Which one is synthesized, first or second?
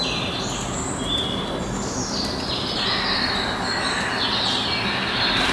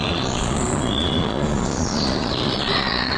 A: second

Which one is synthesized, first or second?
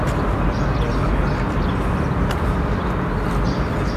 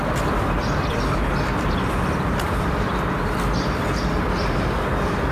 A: second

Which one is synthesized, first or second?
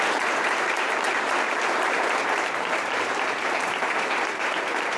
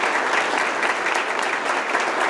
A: first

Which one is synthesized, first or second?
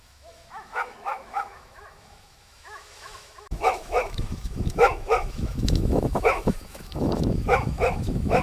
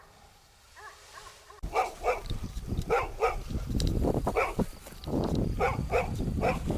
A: first